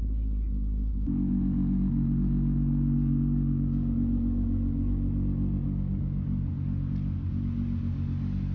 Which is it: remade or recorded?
recorded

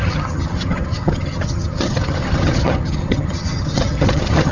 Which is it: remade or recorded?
remade